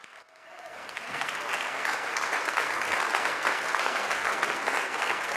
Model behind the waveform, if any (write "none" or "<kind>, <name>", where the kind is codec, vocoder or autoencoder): codec, SNAC